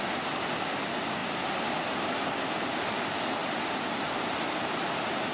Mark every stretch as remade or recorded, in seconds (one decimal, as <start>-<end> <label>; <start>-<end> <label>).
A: 0.0-5.3 recorded